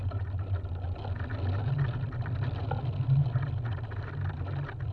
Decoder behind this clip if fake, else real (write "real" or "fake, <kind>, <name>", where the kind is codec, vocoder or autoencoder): real